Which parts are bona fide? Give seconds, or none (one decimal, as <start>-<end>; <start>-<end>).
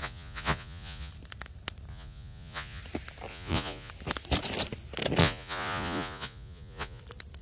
1.1-1.9; 2.8-3.3; 3.9-5.2; 7.0-7.4